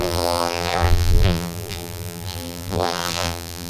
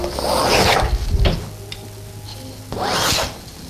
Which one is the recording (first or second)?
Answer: second